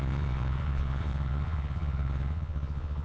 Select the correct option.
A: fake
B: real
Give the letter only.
A